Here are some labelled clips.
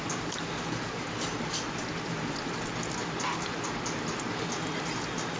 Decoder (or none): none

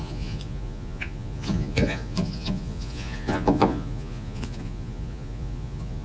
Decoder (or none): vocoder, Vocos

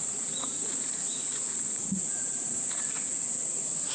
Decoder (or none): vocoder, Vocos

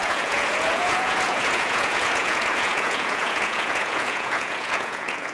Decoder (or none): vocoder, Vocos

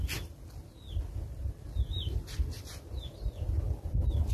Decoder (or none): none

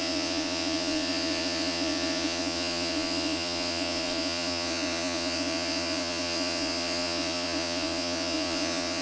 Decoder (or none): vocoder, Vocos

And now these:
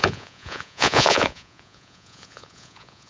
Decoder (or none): vocoder, Vocos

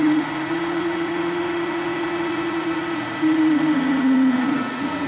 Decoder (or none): vocoder, Vocos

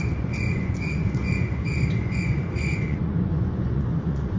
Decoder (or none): vocoder, Vocos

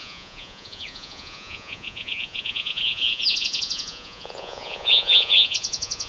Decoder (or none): vocoder, Vocos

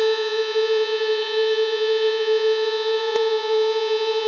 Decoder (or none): vocoder, Vocos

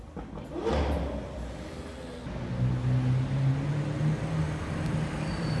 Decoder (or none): none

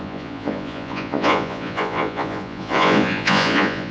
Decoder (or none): vocoder, Vocos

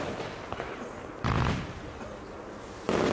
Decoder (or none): none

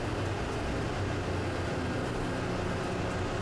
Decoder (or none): none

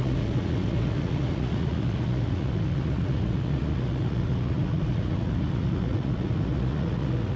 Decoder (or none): vocoder, Vocos